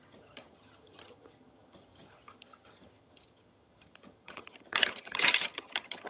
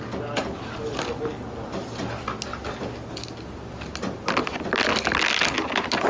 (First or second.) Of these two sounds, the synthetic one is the first